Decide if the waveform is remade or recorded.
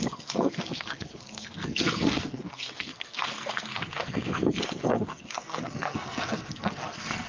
remade